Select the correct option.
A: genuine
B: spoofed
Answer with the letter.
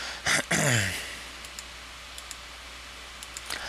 A